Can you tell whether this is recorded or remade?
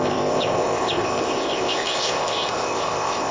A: remade